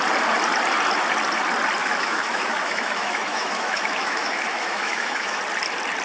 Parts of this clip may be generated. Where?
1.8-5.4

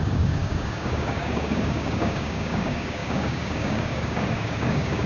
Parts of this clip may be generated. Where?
0.0-5.1

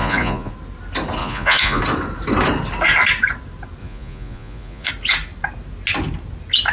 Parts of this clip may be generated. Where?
0.0-0.5; 1.2-1.8; 3.8-4.9

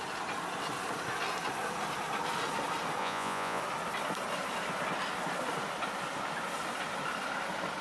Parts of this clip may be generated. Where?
3.0-3.6

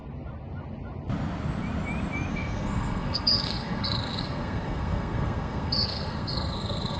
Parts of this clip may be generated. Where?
2.3-7.0